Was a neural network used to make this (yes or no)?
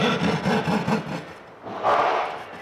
no